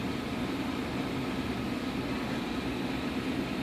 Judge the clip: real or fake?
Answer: real